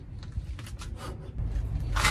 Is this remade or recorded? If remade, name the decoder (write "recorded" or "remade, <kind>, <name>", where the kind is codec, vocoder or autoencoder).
recorded